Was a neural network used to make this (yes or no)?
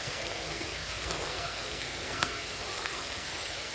yes